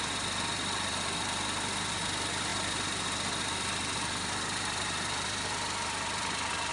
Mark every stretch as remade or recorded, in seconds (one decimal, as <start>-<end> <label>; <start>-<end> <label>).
0.0-6.7 recorded